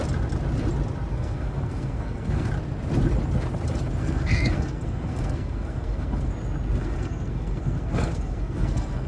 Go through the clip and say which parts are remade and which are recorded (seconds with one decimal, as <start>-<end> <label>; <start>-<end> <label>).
0.0-1.1 recorded; 1.1-2.5 remade; 2.5-4.0 recorded; 4.0-6.3 remade; 6.3-6.8 recorded; 6.8-9.1 remade